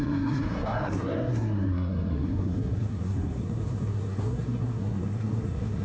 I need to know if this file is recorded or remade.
remade